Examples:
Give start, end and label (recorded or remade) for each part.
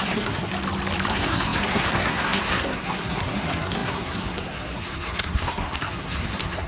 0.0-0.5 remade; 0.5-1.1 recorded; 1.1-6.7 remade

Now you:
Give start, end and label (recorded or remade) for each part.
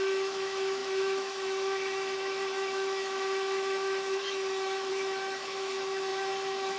0.0-6.8 remade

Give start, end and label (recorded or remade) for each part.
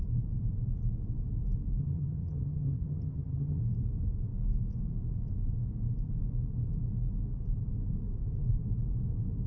0.0-1.8 recorded; 1.8-3.6 remade; 3.6-9.5 recorded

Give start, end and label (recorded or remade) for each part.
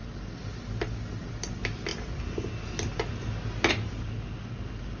0.0-5.0 recorded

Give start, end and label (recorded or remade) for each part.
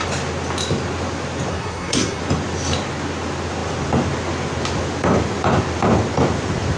0.0-1.5 recorded; 1.5-2.2 remade; 2.2-6.8 recorded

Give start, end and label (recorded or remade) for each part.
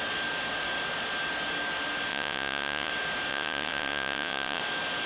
0.0-2.1 recorded; 2.1-2.9 remade; 2.9-3.3 recorded; 3.3-4.6 remade; 4.6-5.1 recorded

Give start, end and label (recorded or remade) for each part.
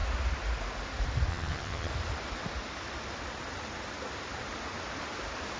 0.0-1.3 recorded; 1.3-1.9 remade; 1.9-5.6 recorded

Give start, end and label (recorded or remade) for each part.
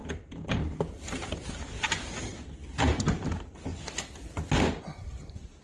0.0-2.3 remade; 2.3-2.9 recorded; 2.9-3.7 remade; 3.7-4.8 recorded; 4.8-5.6 remade